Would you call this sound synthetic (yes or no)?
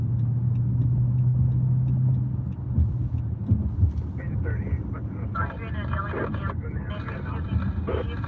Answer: no